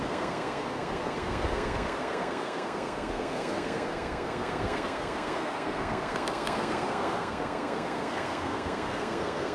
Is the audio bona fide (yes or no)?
no